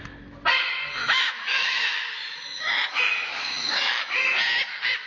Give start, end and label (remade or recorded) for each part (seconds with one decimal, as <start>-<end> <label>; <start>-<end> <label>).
0.0-1.0 recorded; 1.0-4.1 remade; 4.1-5.1 recorded